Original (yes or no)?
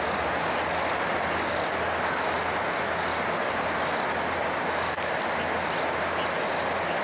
yes